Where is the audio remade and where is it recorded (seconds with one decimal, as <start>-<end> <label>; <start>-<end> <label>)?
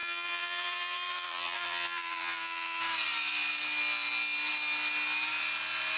0.0-2.8 remade; 2.8-6.0 recorded